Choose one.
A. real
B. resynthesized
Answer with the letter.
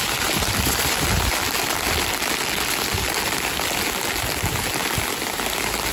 A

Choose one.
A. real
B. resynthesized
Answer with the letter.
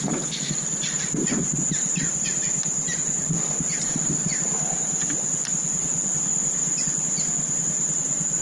A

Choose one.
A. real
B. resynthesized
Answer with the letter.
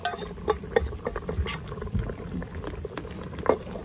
A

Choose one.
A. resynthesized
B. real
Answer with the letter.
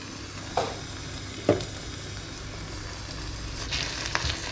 B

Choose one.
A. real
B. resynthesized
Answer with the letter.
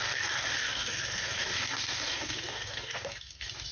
B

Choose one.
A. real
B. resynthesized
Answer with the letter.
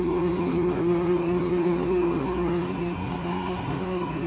B